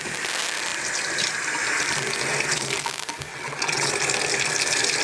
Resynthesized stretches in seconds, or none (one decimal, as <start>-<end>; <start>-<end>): 3.3-3.9